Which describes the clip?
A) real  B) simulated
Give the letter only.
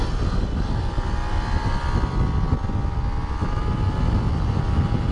A